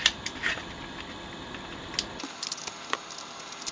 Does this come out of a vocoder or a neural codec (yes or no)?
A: no